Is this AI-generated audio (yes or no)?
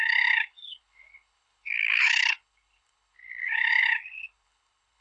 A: yes